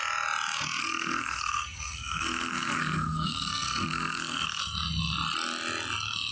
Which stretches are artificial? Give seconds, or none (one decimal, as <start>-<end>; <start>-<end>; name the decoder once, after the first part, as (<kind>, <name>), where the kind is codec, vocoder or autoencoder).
0.8-4.6 (codec, SNAC)